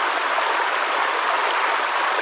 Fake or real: real